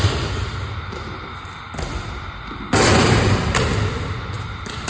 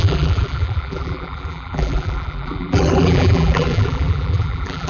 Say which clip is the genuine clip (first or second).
first